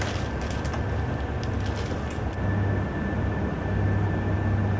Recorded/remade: recorded